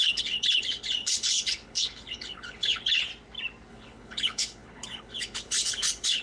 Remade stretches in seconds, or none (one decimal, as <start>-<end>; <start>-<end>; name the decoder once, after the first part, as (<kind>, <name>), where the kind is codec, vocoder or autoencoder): 0.0-3.1 (codec, HILCodec); 3.7-6.2